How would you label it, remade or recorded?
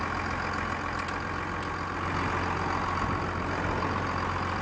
recorded